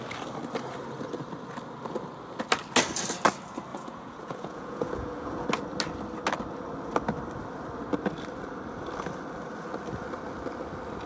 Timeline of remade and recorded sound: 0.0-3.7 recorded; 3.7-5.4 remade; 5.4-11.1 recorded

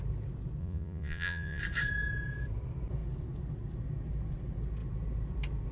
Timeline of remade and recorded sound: 0.0-0.6 recorded; 0.6-1.6 remade; 1.6-5.7 recorded

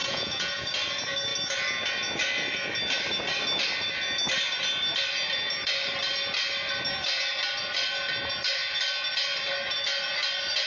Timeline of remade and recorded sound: 0.0-0.7 remade; 0.7-10.7 recorded

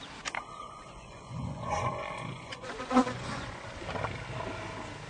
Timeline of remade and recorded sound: 0.0-0.6 recorded; 0.6-3.7 remade; 3.7-5.1 recorded

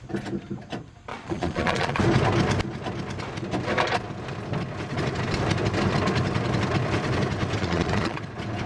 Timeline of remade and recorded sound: 0.0-1.1 recorded; 1.1-2.0 remade; 2.0-7.6 recorded; 7.6-8.2 remade; 8.2-8.7 recorded